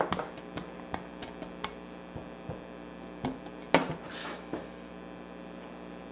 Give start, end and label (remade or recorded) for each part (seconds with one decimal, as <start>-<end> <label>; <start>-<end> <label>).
0.0-4.2 recorded; 4.2-4.9 remade; 4.9-6.1 recorded